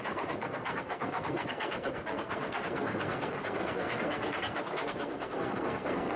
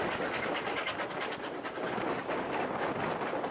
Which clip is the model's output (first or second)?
first